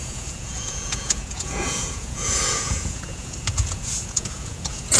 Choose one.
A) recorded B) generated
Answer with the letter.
B